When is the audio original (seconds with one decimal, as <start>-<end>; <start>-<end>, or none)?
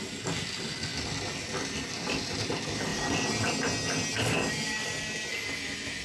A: 0.0-2.9; 3.5-4.1; 4.9-6.0